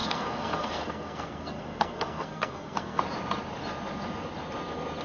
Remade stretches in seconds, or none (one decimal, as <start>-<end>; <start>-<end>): 0.0-3.0